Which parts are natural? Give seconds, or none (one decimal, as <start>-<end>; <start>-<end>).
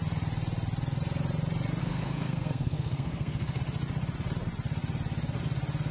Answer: 0.0-1.8; 3.6-5.9